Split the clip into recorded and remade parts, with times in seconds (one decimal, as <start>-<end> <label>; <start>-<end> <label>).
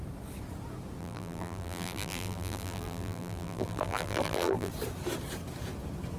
0.0-1.0 recorded; 1.0-4.7 remade; 4.7-6.2 recorded